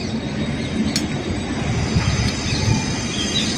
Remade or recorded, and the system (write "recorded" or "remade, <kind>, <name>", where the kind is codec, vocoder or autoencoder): recorded